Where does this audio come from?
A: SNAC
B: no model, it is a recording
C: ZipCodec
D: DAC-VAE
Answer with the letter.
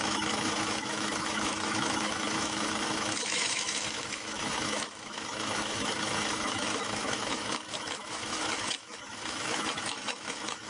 D